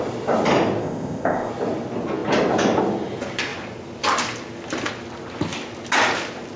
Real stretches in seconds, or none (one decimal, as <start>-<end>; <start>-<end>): 0.0-0.8; 1.5-6.6